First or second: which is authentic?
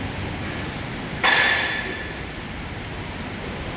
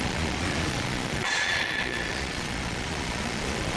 first